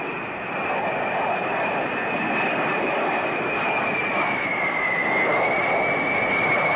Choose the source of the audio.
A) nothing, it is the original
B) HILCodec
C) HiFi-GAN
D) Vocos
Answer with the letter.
A